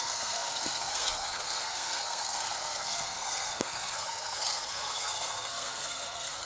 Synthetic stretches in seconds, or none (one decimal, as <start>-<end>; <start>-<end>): 0.0-6.5